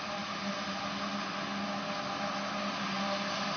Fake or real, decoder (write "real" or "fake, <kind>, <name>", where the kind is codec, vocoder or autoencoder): real